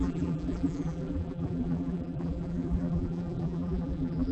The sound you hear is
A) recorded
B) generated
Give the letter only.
B